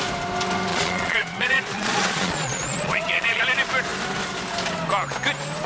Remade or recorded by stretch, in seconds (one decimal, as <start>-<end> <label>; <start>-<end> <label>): 0.0-0.7 recorded; 0.7-3.4 remade; 3.4-5.7 recorded

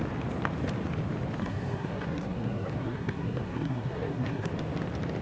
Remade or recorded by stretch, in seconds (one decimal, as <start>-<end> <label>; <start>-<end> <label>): 0.0-1.4 recorded; 1.4-4.5 remade; 4.5-5.2 recorded

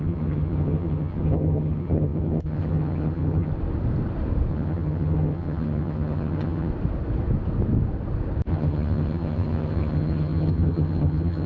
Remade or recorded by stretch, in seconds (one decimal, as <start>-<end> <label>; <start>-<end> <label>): 0.0-3.5 remade; 3.5-4.5 recorded; 4.5-6.7 remade; 6.7-8.5 recorded; 8.5-11.5 remade

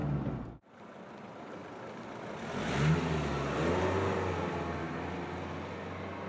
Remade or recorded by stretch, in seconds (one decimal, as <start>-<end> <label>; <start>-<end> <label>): 0.0-6.3 recorded

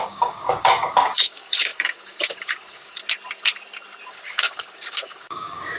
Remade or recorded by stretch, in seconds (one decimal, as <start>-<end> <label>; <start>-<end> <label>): 0.0-3.0 remade; 3.0-4.1 recorded; 4.1-5.8 remade